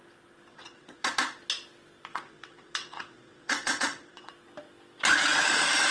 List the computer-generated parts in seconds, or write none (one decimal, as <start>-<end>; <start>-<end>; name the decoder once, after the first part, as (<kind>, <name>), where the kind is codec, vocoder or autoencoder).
0.5-1.1 (vocoder, WaveNeXt); 2.1-4.3